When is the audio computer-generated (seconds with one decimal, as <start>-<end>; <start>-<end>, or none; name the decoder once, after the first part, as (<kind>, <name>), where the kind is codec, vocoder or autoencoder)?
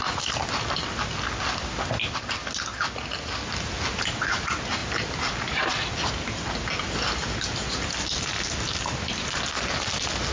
none